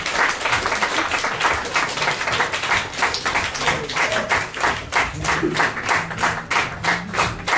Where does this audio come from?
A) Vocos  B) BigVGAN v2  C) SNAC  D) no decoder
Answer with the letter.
B